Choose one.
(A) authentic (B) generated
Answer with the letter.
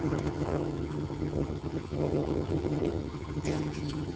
B